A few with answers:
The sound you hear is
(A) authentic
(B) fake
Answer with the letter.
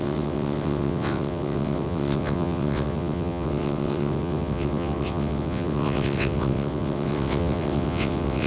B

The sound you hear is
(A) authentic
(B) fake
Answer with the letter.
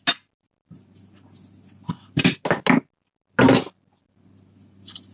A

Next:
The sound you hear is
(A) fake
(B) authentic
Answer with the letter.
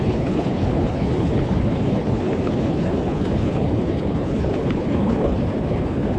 A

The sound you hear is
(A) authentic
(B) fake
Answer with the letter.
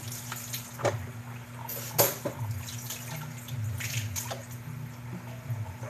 A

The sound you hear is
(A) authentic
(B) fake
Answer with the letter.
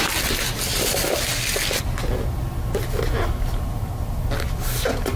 A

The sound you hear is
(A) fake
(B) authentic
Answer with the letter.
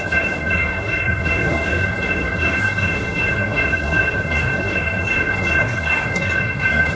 A